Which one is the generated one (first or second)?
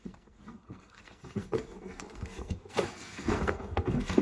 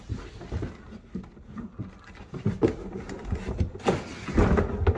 first